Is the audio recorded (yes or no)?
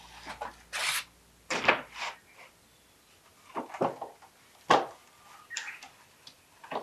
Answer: yes